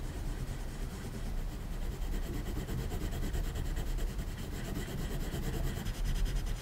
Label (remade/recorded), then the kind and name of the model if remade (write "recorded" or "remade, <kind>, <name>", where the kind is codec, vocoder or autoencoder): recorded